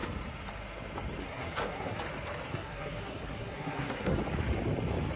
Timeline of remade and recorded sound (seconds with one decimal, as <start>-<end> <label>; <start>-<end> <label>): 0.0-1.2 recorded; 1.2-2.0 remade; 2.0-2.5 recorded; 2.5-4.2 remade; 4.2-5.2 recorded